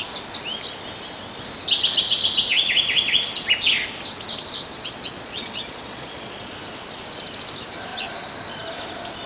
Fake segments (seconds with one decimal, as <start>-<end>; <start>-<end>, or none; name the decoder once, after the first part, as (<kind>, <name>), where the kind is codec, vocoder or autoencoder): 4.7-6.5 (vocoder, Vocos)